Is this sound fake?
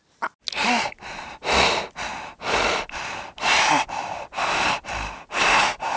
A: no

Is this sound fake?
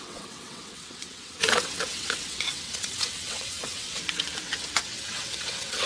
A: yes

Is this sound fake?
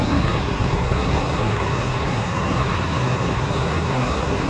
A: yes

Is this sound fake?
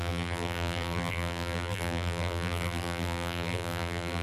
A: yes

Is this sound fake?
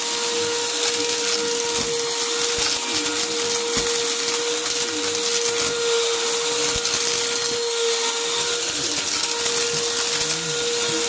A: no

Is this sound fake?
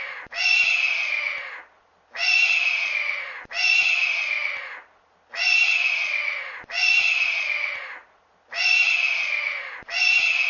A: no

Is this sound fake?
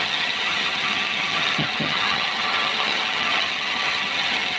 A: yes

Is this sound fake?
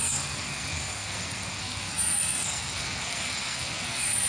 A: yes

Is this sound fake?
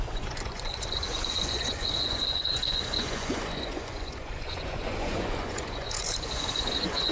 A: yes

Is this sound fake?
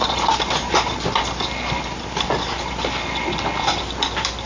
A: no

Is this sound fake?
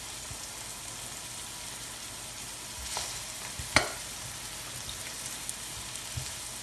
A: no